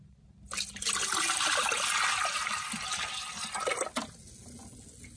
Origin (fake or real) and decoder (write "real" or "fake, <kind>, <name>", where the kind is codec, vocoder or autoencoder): real